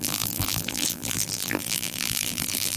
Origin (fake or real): fake